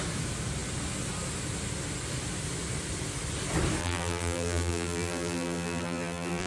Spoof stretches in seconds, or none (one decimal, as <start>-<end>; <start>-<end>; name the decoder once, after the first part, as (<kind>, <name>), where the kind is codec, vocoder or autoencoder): 3.8-6.5 (vocoder, BigVGAN v2)